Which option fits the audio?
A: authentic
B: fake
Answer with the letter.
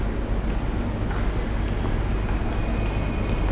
A